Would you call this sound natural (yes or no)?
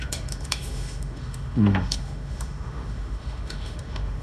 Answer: no